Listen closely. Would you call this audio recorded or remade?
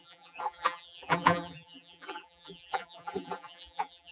remade